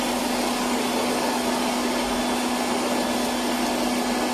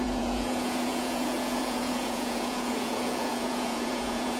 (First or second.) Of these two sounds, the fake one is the second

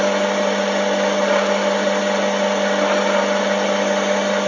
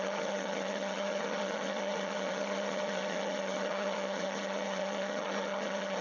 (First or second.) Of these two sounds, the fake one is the second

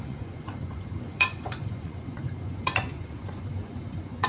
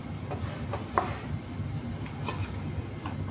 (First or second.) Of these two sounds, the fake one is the first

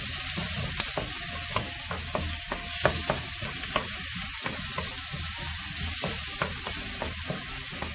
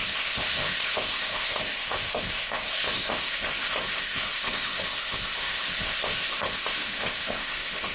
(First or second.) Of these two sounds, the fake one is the second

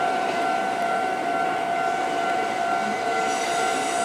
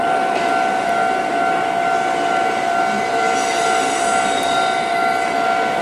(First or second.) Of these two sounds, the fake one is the first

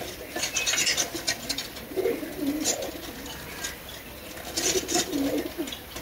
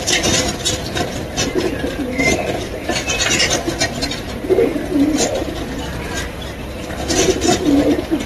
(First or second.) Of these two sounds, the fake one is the second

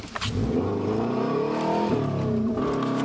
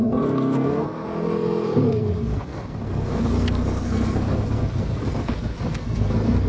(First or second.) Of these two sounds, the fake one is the second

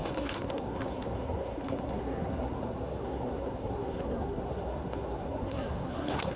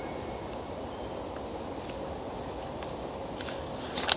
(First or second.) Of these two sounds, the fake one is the first